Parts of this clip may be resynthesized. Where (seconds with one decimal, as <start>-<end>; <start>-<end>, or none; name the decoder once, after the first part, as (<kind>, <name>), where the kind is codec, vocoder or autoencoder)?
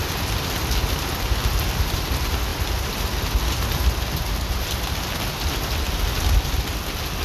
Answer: none